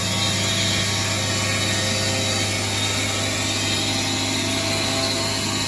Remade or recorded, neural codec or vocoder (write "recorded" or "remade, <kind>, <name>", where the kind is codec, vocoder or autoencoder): recorded